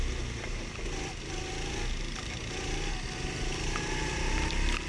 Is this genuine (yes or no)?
yes